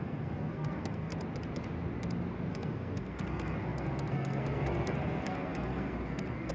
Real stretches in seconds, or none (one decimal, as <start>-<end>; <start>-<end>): 1.1-2.5